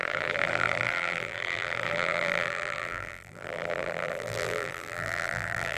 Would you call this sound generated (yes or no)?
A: yes